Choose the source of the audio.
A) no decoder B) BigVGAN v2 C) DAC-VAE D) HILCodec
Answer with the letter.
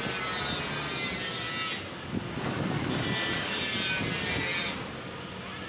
A